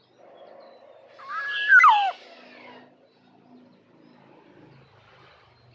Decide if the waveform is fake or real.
real